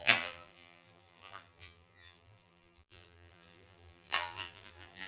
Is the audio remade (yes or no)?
yes